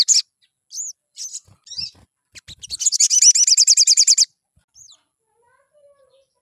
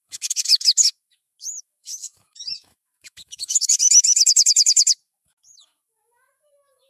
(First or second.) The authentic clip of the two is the first